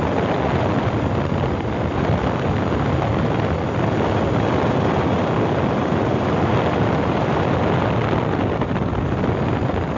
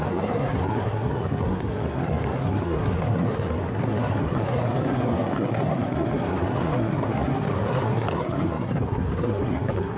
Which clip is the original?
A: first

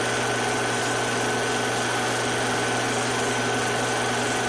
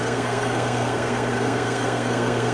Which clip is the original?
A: first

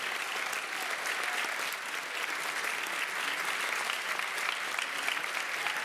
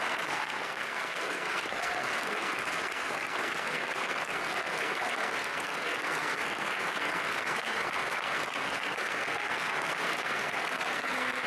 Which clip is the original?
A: first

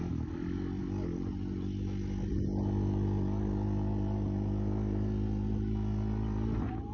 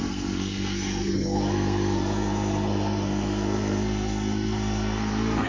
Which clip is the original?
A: first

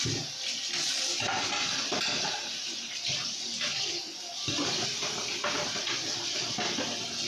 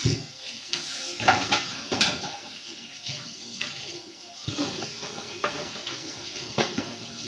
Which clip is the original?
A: first